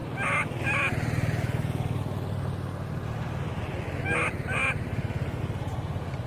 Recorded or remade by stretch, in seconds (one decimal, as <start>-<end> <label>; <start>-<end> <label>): 0.0-6.3 recorded